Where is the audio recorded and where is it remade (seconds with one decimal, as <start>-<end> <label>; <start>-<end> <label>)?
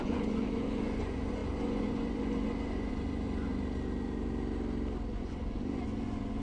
0.0-3.5 remade; 3.5-5.1 recorded; 5.1-6.4 remade